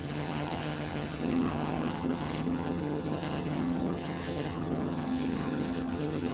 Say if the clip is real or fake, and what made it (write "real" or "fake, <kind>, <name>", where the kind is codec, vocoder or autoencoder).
fake, vocoder, HiFi-GAN